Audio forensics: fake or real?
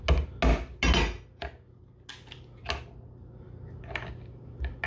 real